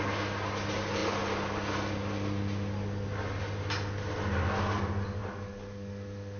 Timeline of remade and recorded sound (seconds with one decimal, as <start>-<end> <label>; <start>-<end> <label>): 0.0-6.4 recorded